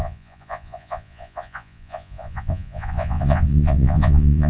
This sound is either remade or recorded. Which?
remade